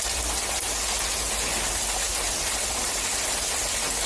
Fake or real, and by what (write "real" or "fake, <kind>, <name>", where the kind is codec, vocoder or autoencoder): real